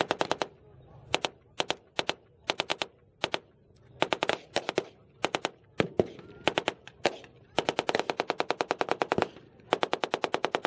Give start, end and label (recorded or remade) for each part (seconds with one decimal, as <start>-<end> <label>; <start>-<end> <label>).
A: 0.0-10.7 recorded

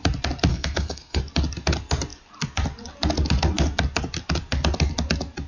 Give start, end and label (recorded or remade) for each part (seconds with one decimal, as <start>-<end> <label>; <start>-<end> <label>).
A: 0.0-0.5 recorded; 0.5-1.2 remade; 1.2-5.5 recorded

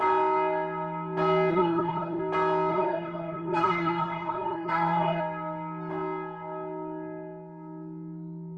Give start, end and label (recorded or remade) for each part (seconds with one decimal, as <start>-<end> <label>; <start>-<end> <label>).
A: 0.0-1.5 recorded; 1.5-2.2 remade; 2.2-2.7 recorded; 2.7-5.2 remade; 5.2-8.6 recorded

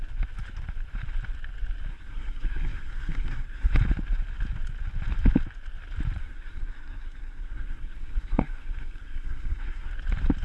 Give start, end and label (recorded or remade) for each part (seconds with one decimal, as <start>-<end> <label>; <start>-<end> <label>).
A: 0.0-1.9 recorded; 1.9-3.7 remade; 3.7-6.2 recorded; 6.2-9.9 remade; 9.9-10.4 recorded

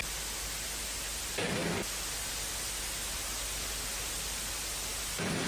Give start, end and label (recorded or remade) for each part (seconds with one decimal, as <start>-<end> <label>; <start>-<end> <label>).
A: 0.0-5.5 recorded

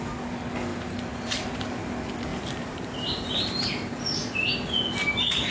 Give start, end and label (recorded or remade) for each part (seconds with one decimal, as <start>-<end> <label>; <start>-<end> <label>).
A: 0.0-0.7 recorded; 0.7-1.8 remade; 1.8-2.3 recorded; 2.3-4.2 remade; 4.2-5.5 recorded

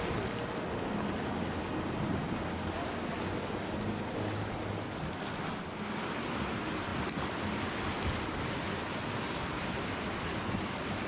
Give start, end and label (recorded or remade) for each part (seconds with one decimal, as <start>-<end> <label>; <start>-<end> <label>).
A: 0.0-11.1 recorded

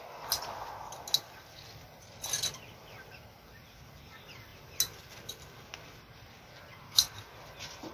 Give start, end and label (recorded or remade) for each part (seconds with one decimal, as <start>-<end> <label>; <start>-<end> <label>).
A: 0.0-7.9 recorded